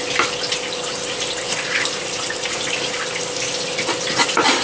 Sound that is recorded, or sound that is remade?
recorded